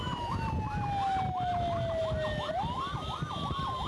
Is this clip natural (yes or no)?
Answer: yes